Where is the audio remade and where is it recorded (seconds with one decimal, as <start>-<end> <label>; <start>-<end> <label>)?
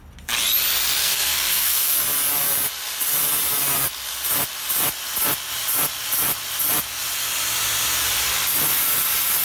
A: 0.0-1.0 recorded; 1.0-2.0 remade; 2.0-9.4 recorded